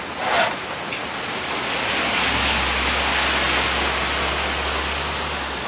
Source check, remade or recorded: recorded